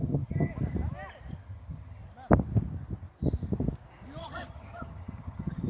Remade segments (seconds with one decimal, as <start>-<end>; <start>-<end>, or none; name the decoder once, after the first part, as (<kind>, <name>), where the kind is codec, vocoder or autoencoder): 0.0-0.5 (vocoder, HiFi-GAN); 1.3-2.0; 4.2-5.7